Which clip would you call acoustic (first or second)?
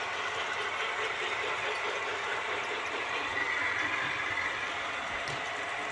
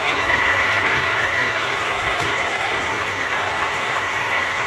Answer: first